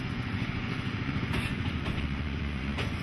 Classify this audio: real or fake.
fake